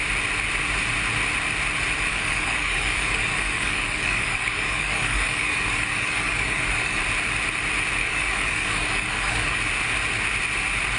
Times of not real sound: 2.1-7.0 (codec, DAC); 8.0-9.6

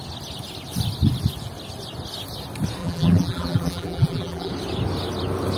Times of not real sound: 2.8-4.5 (vocoder, BigVGAN v2)

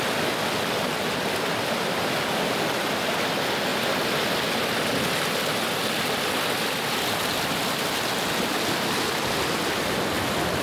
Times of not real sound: none

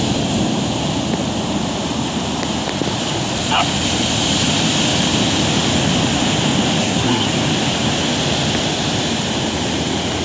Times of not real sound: 6.8-7.3 (codec, SNAC)

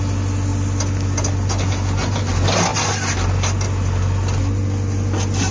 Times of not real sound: none

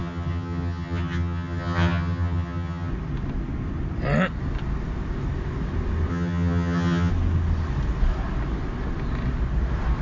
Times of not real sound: 0.0-2.9 (vocoder, HiFi-GAN); 6.1-7.1

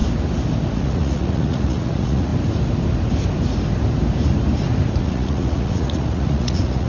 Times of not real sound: 0.7-2.3 (vocoder, Vocos); 5.0-6.9

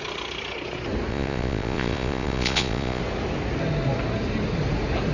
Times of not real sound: 1.1-3.0 (vocoder, Vocos)